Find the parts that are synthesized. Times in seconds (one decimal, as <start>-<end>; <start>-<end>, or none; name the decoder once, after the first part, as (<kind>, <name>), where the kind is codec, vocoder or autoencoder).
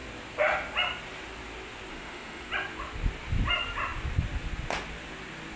1.9-2.5 (autoencoder, DAC-VAE)